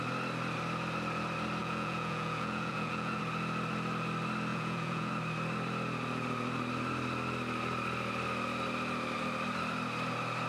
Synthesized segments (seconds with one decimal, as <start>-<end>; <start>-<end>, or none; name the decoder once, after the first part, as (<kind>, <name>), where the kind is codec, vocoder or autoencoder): 1.6-3.2 (vocoder, Vocos); 4.5-5.1